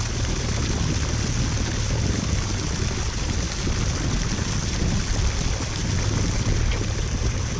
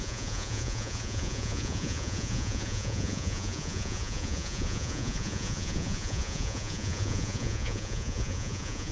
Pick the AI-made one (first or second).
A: second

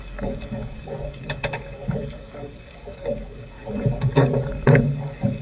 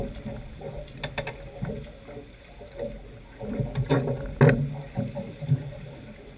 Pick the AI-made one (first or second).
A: first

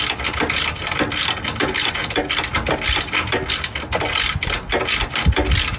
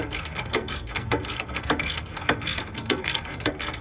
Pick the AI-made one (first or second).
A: second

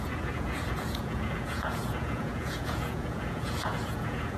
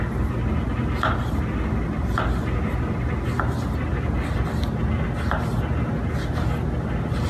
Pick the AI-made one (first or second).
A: first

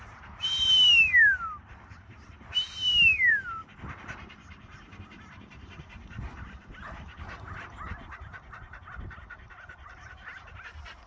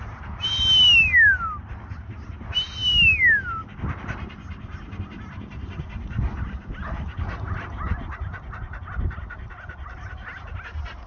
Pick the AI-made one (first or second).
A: first